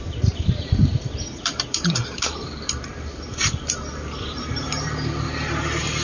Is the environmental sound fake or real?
fake